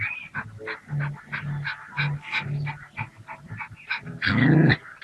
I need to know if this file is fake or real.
real